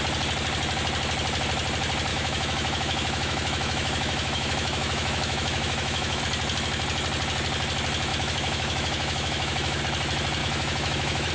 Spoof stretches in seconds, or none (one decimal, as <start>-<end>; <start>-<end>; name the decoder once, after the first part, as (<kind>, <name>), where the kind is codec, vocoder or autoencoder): 2.1-6.2 (autoencoder, DAC-VAE); 8.1-9.8; 10.4-11.3